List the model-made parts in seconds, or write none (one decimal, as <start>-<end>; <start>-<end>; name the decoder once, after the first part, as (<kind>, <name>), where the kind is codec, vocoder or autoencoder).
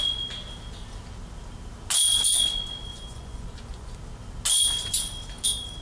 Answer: 2.9-3.9 (vocoder, Vocos)